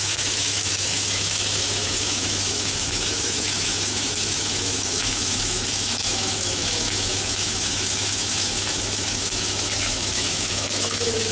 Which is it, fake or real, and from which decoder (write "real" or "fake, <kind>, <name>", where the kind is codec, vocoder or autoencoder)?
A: fake, autoencoder, DAC-VAE